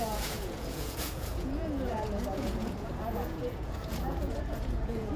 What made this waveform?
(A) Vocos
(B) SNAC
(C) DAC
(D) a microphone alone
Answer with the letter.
A